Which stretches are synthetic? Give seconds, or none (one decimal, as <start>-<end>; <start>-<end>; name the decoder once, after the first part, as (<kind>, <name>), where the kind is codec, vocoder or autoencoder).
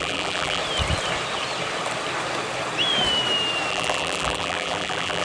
0.0-0.6 (vocoder, BigVGAN v2); 3.7-5.2